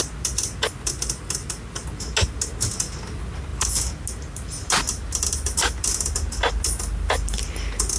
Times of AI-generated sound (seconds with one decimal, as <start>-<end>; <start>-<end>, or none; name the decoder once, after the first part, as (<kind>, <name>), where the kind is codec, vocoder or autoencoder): none